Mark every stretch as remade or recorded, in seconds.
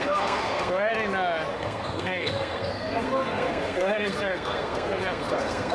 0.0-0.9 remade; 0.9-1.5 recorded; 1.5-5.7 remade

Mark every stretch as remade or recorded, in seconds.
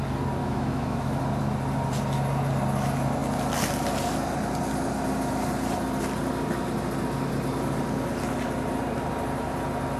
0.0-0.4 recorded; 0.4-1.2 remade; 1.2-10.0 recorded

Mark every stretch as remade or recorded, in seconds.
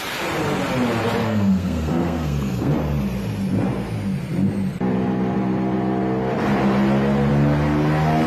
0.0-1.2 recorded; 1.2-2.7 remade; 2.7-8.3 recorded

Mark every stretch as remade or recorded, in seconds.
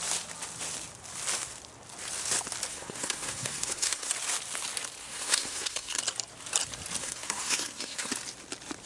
0.0-2.7 recorded; 2.7-4.1 remade; 4.1-5.0 recorded; 5.0-6.0 remade; 6.0-7.0 recorded; 7.0-8.1 remade; 8.1-8.9 recorded